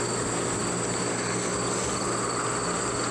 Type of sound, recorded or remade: recorded